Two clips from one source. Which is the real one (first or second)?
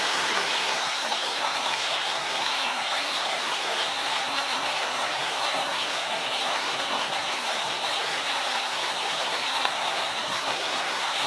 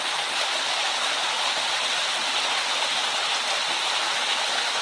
second